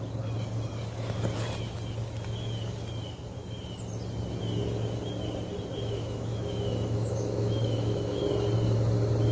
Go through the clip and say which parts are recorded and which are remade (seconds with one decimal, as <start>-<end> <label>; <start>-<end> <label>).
0.0-5.7 recorded; 5.7-8.2 remade; 8.2-9.3 recorded